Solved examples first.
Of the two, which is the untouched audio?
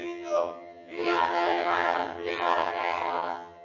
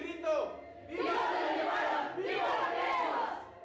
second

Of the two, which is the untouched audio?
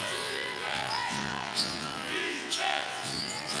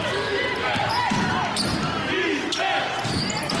second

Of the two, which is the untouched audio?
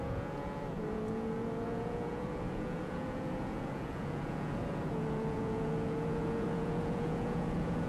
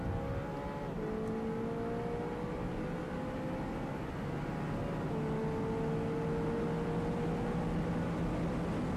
second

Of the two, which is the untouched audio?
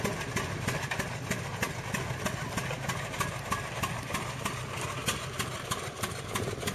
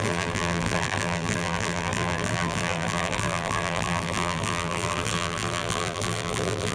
first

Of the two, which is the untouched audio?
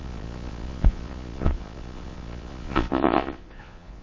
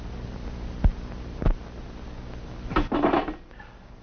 second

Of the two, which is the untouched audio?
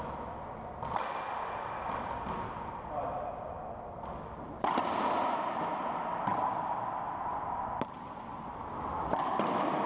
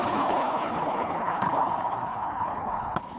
first